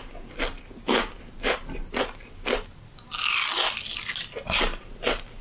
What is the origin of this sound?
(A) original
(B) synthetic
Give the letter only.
A